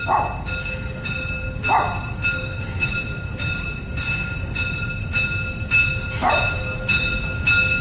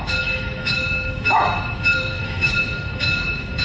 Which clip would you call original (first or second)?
first